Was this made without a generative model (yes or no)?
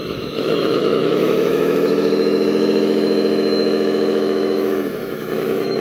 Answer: no